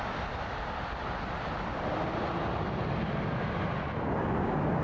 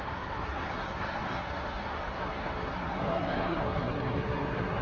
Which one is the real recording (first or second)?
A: first